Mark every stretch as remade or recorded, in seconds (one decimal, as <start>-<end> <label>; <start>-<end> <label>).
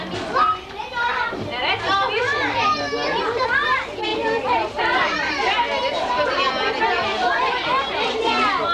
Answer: 0.0-4.1 recorded; 4.1-5.3 remade; 5.3-8.7 recorded